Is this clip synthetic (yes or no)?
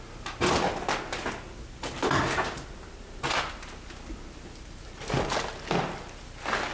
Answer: no